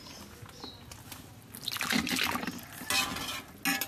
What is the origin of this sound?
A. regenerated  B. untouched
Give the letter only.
B